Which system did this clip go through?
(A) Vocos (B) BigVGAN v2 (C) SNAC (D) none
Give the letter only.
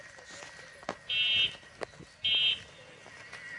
D